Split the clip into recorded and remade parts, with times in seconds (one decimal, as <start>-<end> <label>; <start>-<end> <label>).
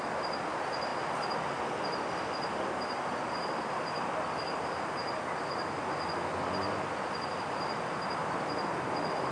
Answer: 0.0-9.3 recorded